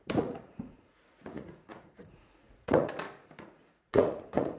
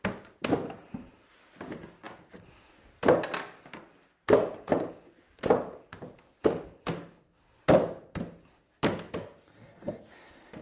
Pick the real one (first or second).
second